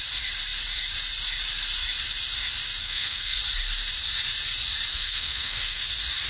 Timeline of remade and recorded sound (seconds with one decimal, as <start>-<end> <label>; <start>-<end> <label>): 0.0-2.8 recorded; 2.8-3.4 remade; 3.4-4.9 recorded; 4.9-5.8 remade; 5.8-6.3 recorded